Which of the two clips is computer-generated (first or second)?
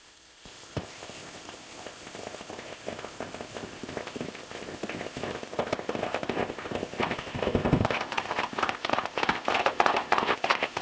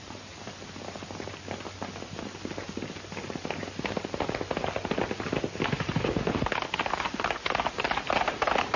first